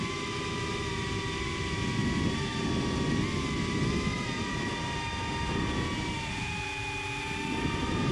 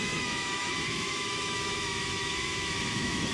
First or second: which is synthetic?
second